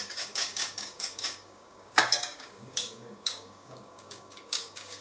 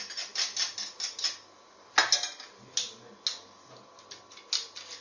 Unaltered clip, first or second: second